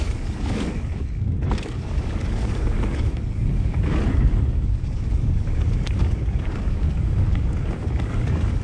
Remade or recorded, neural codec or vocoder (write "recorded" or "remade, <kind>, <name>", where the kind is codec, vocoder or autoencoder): remade, codec, DAC